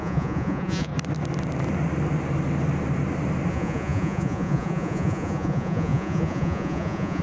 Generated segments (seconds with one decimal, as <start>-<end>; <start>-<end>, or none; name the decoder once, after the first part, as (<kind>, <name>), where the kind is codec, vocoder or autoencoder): 0.0-0.9 (vocoder, Vocos); 3.5-7.2